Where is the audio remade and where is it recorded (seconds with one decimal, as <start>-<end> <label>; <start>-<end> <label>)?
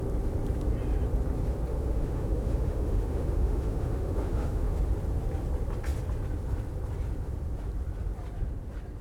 0.0-1.7 recorded; 1.7-4.8 remade; 4.8-9.0 recorded